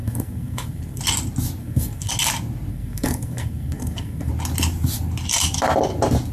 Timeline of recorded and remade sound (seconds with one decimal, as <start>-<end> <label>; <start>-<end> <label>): 0.0-1.0 remade; 1.0-1.6 recorded; 1.6-2.1 remade; 2.1-2.7 recorded; 2.7-4.3 remade; 4.3-6.3 recorded